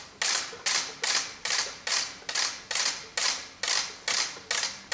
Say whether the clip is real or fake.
real